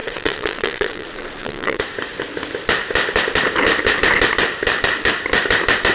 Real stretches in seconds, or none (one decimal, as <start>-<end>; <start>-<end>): 1.8-5.9